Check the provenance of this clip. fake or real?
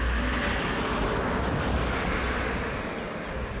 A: real